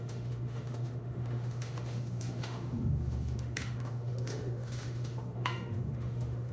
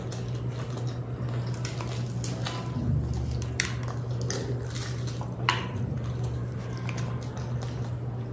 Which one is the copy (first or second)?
first